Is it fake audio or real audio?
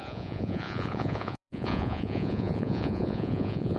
fake